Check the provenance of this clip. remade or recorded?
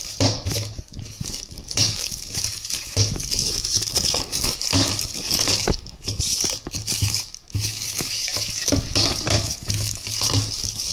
remade